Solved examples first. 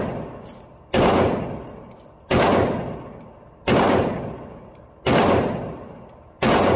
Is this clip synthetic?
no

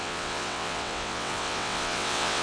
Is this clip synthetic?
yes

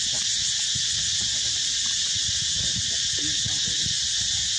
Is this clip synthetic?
no